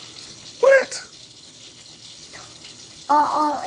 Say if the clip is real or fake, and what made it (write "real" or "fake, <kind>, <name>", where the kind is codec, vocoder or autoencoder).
fake, codec, HILCodec